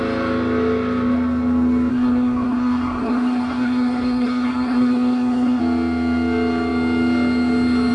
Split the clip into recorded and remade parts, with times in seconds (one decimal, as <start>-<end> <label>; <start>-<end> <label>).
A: 0.0-1.9 recorded; 1.9-5.6 remade; 5.6-7.9 recorded